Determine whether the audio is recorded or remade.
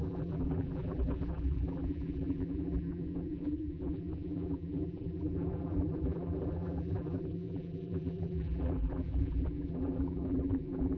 remade